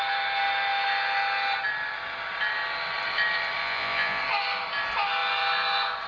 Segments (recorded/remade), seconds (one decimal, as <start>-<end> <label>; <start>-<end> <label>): 0.0-3.6 recorded; 3.6-4.2 remade; 4.2-6.1 recorded